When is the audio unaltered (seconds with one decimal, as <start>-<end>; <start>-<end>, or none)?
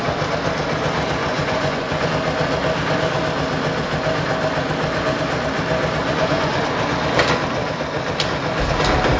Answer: 0.0-1.2; 2.1-6.0; 6.6-9.2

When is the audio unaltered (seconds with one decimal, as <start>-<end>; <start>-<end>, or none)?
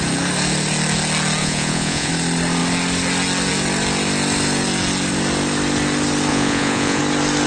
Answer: 0.0-1.4; 2.1-6.3; 7.0-7.5